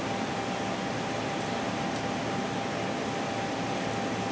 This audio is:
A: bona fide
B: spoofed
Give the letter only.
A